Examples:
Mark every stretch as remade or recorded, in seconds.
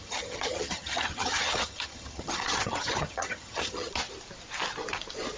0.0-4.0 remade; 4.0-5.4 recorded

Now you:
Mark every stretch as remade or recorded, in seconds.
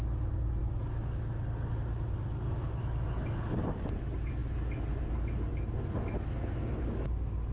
0.0-7.5 recorded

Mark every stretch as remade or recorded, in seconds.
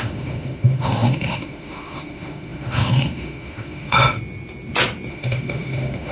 0.0-4.0 remade; 4.0-5.1 recorded; 5.1-6.1 remade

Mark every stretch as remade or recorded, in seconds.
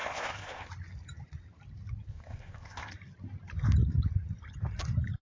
0.0-0.7 remade; 0.7-2.1 recorded; 2.1-2.9 remade; 2.9-5.2 recorded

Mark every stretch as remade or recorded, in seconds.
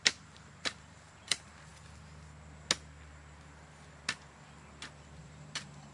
0.0-1.7 remade; 1.7-5.2 recorded; 5.2-5.9 remade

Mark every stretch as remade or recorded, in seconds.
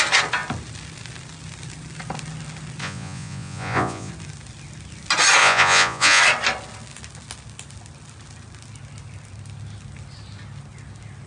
0.0-2.8 recorded; 2.8-4.1 remade; 4.1-5.4 recorded; 5.4-6.2 remade; 6.2-11.3 recorded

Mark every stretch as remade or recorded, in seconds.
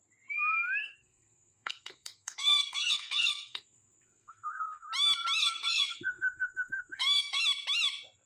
0.0-0.8 recorded; 0.8-4.9 remade; 4.9-5.4 recorded; 5.4-7.4 remade; 7.4-8.3 recorded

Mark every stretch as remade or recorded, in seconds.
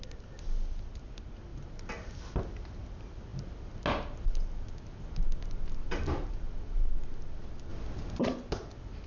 0.0-9.1 recorded